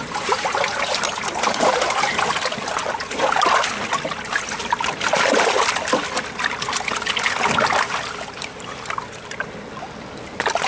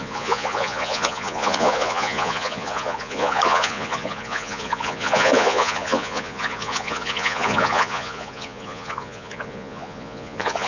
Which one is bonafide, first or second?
first